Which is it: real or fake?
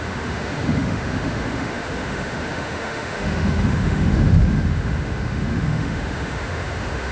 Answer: fake